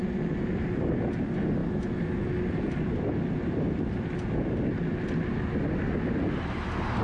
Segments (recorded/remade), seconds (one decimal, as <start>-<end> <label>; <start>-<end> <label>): 0.0-7.0 recorded